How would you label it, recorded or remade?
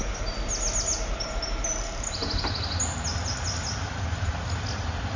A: recorded